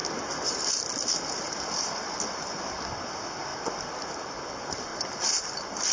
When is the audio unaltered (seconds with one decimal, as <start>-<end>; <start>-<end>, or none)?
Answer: 0.0-5.9